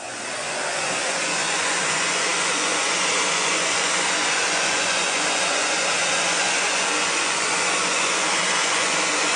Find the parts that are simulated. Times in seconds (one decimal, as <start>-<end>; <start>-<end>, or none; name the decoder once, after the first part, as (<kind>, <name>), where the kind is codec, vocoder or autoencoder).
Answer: 0.0-9.4 (vocoder, Vocos)